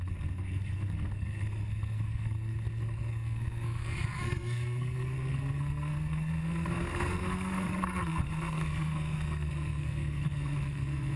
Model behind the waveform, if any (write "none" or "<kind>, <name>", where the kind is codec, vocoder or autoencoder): codec, SNAC